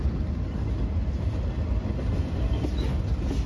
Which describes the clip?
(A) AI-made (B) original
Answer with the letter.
B